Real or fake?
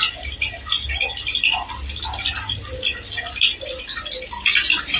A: real